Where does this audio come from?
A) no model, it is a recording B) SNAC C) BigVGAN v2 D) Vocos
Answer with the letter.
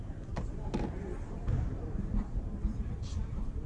C